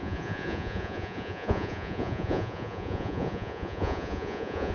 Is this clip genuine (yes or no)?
no